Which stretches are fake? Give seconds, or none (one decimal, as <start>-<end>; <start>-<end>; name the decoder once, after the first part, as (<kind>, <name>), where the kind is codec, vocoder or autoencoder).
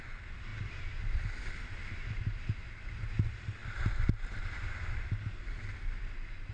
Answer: none